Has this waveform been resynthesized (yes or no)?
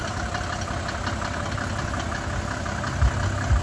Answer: no